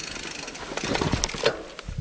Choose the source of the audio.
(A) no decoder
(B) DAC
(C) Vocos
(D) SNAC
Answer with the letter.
A